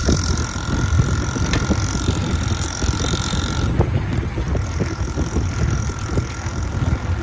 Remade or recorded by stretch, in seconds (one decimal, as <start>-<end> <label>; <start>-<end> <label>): 0.0-7.2 recorded